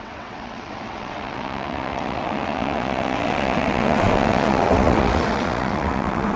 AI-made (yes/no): yes